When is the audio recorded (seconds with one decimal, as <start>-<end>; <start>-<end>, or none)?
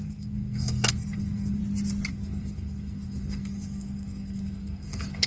1.6-2.1